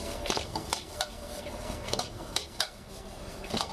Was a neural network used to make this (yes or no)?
yes